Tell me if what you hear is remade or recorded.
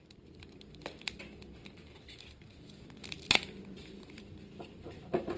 remade